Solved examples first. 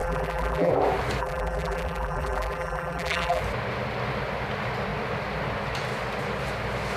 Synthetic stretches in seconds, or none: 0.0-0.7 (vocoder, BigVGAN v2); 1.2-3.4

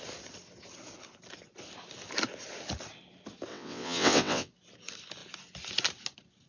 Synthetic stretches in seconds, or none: 3.5-4.5 (vocoder, WaveNeXt)

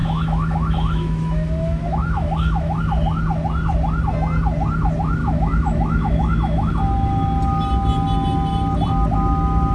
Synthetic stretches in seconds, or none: 0.0-2.8 (autoencoder, DAC-VAE); 5.2-6.7

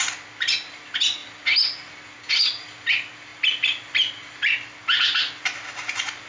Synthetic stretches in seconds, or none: none

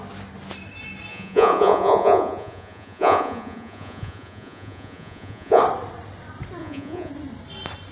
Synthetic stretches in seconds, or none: 1.1-5.6 (vocoder, Vocos); 6.6-7.1

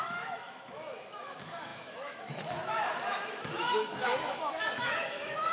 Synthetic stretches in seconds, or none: 0.0-5.5 (autoencoder, DAC-VAE)

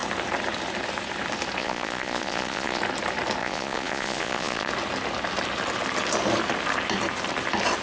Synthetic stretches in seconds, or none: 1.6-2.8 (vocoder, Vocos); 3.4-4.7

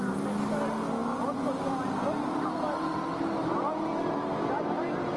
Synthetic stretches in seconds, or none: none